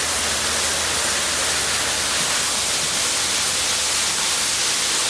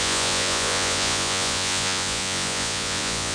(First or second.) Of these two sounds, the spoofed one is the second